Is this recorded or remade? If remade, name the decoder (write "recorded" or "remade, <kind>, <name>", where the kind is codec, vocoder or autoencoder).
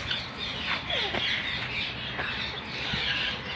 recorded